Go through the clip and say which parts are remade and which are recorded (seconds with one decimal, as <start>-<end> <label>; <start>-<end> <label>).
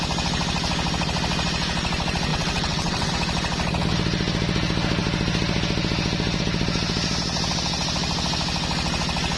0.0-2.3 recorded; 2.3-3.1 remade; 3.1-9.4 recorded